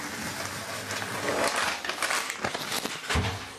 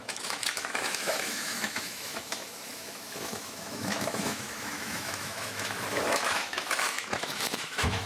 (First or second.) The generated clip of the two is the second